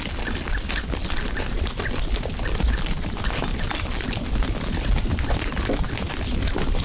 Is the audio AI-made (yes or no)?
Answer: no